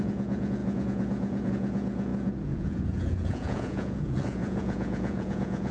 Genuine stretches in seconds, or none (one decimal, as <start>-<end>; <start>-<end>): none